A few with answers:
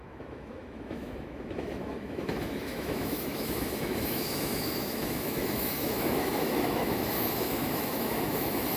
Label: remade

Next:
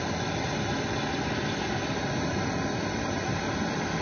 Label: recorded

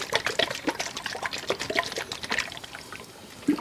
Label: recorded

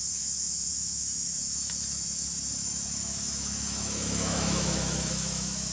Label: remade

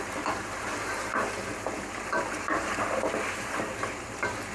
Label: recorded